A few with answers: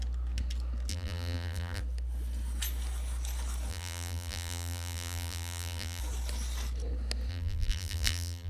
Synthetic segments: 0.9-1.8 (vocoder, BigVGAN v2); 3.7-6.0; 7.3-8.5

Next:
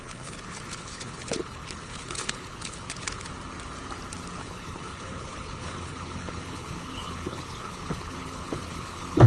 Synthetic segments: 0.0-3.3 (codec, HILCodec); 4.4-9.3

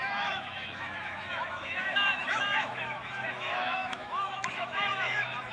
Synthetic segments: 0.0-5.5 (autoencoder, DAC-VAE)

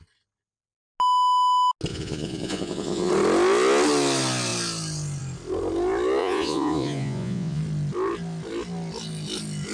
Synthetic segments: 1.9-3.1 (vocoder, Vocos); 6.2-7.6